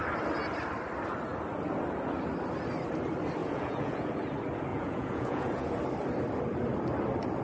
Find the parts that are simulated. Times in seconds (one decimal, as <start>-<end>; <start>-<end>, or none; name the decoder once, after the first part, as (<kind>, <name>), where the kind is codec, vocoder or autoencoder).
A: 3.4-4.1 (vocoder, Vocos); 4.7-5.7

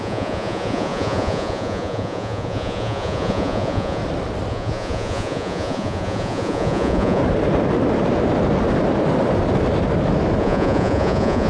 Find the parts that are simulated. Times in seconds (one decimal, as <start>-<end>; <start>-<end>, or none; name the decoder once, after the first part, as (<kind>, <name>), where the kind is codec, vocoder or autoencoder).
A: 0.0-4.0 (vocoder, Vocos); 4.5-7.2; 10.4-11.5

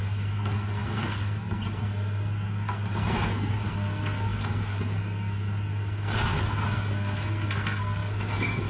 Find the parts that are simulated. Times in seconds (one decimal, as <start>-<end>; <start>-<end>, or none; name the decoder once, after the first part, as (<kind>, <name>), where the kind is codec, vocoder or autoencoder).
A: 0.0-8.7 (codec, SNAC)

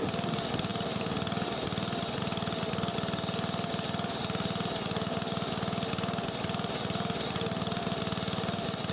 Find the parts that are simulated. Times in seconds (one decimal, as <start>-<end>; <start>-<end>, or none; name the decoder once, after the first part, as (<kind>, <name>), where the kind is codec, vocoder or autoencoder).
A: none

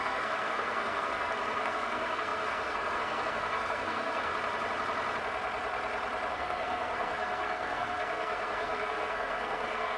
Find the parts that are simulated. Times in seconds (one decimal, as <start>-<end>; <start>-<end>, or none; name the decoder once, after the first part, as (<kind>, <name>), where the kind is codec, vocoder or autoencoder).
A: 0.0-4.3 (codec, SNAC); 6.3-10.0